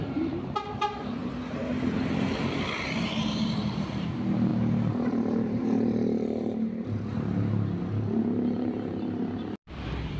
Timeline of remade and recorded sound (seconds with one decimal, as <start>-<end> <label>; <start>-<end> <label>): 0.0-1.2 remade; 1.2-2.8 recorded; 2.8-10.2 remade